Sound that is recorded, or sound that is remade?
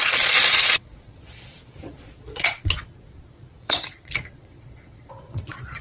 remade